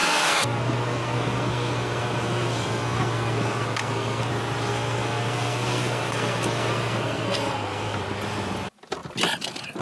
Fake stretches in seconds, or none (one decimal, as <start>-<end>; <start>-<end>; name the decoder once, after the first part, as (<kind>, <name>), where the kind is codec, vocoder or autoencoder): 0.0-4.3 (codec, SNAC); 4.7-8.0